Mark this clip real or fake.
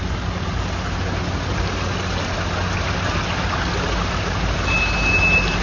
real